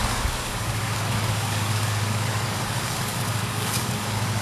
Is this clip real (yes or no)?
no